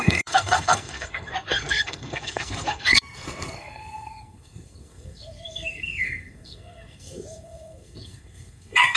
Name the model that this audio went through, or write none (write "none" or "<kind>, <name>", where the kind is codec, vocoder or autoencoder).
codec, SNAC